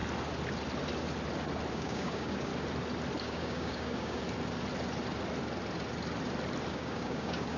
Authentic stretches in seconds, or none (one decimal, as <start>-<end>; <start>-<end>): 0.0-1.7; 2.5-3.2; 4.2-6.7